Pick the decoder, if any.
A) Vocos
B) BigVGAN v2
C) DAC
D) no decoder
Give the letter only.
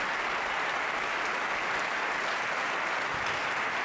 D